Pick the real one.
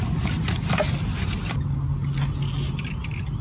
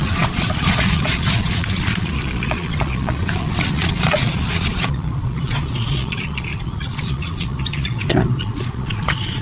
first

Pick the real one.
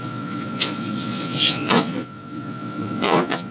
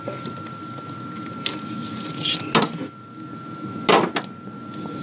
second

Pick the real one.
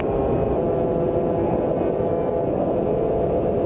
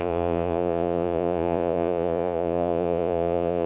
first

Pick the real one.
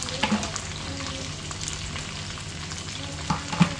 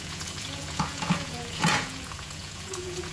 first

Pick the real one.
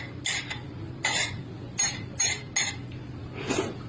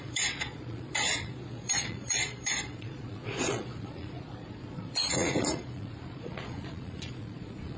first